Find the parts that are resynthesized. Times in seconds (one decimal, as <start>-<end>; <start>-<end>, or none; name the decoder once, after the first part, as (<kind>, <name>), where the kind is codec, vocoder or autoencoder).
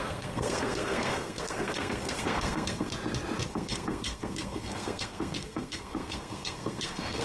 0.0-2.9 (codec, SNAC); 3.5-7.2